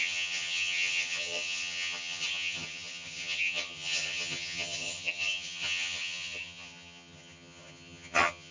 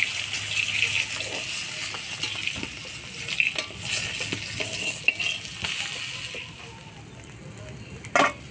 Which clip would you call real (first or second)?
second